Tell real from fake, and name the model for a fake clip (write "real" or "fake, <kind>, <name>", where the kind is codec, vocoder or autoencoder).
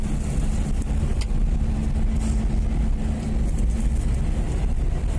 real